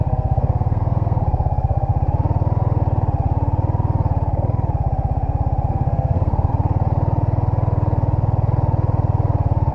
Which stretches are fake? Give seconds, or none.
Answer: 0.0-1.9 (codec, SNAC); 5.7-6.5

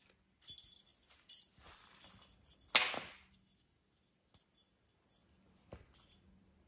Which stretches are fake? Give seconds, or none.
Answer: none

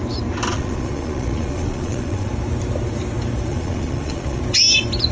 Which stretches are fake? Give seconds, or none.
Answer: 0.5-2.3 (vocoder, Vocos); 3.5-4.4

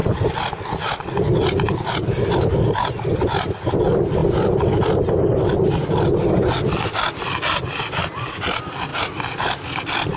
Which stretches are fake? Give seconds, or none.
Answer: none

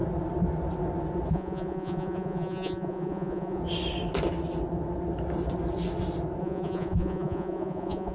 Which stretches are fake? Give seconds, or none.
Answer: 1.3-3.6 (vocoder, Vocos); 6.4-8.1

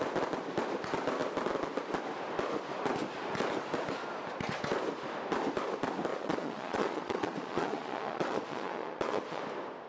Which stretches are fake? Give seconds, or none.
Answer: 6.1-9.4 (vocoder, Vocos)